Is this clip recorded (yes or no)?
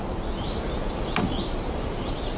yes